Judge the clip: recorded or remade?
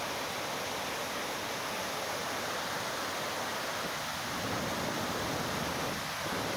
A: recorded